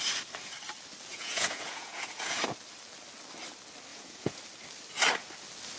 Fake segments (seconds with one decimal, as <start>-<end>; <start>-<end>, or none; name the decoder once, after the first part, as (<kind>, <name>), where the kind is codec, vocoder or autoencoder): 1.1-2.4 (vocoder, Vocos); 3.9-4.4